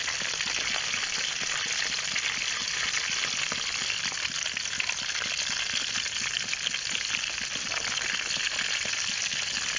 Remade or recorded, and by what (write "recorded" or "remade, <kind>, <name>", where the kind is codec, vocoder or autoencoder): recorded